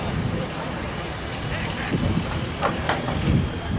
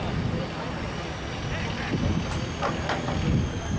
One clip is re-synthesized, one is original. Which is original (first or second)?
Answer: second